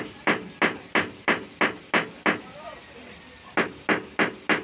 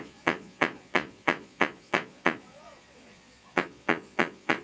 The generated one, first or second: second